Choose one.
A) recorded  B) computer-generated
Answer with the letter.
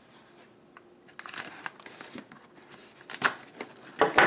A